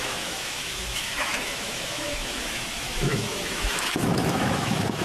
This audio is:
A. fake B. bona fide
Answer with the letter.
A